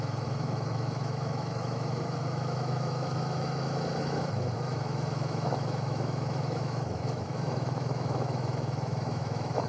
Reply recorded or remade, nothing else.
remade